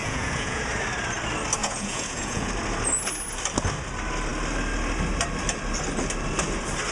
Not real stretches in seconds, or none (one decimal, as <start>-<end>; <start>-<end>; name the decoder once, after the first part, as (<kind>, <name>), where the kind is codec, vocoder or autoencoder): 0.0-0.6 (vocoder, Vocos); 1.6-2.5